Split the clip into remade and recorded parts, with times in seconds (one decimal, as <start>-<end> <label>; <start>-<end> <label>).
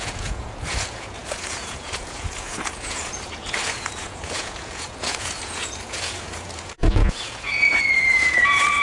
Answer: 0.0-8.8 remade